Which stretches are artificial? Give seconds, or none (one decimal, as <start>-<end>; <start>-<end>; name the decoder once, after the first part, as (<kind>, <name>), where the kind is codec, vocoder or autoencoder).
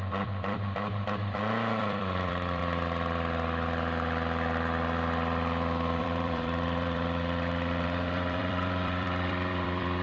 0.0-2.6 (vocoder, BigVGAN v2); 6.0-10.0